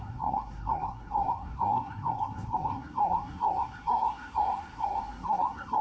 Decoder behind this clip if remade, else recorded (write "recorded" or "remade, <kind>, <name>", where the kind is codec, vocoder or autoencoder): remade, codec, SNAC